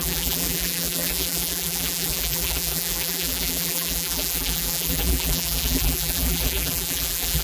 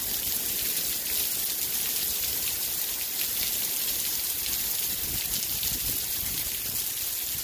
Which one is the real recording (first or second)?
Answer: second